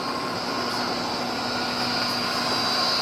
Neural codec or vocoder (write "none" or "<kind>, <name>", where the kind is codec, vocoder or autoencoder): none